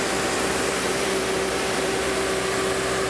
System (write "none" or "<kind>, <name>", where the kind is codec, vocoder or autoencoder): vocoder, BigVGAN v2